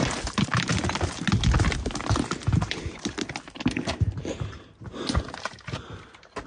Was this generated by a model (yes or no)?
no